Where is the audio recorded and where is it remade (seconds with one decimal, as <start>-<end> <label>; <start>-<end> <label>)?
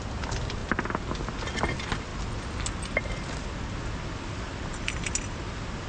0.0-5.9 recorded